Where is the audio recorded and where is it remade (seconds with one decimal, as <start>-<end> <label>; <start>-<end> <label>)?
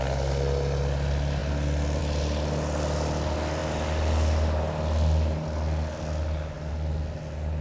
0.0-7.6 recorded